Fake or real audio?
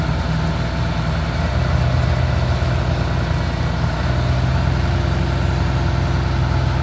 real